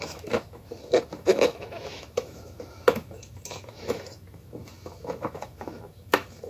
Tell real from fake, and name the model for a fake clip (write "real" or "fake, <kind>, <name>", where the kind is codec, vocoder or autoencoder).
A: fake, autoencoder, DAC-VAE